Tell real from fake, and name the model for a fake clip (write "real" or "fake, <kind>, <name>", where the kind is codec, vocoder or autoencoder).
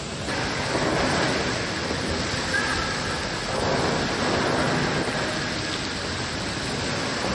real